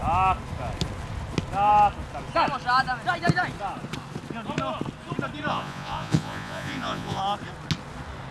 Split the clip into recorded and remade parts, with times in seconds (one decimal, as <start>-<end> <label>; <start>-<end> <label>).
0.0-5.5 recorded; 5.5-7.2 remade; 7.2-8.3 recorded